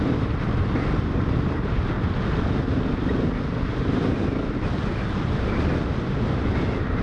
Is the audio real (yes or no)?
yes